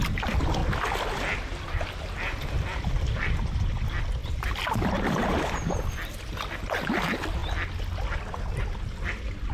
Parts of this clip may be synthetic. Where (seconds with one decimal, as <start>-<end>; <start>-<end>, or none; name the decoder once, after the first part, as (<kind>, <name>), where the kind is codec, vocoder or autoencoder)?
0.0-0.6 (vocoder, BigVGAN v2); 2.8-7.4; 8.8-9.5